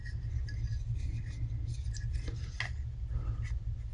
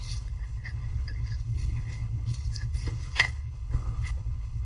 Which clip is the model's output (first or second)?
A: second